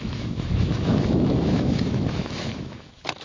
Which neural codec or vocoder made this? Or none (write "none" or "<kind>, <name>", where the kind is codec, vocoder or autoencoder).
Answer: autoencoder, DAC-VAE